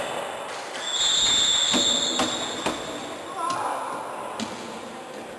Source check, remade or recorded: recorded